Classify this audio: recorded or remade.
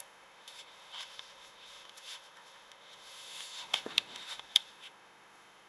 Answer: remade